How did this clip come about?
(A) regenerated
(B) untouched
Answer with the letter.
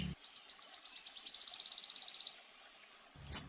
B